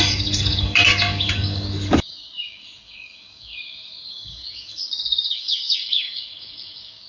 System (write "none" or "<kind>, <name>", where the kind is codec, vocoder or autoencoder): codec, DAC